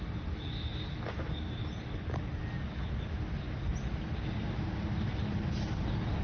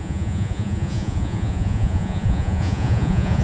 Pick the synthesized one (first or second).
second